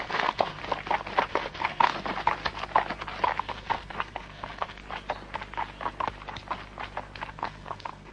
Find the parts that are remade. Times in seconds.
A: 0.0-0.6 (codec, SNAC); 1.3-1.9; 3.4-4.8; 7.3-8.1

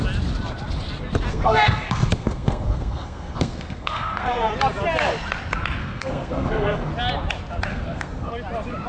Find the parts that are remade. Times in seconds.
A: 1.3-4.5 (codec, SNAC); 5.8-6.9; 7.7-8.3